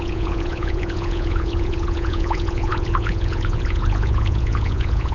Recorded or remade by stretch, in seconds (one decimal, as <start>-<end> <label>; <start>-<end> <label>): 0.0-5.1 remade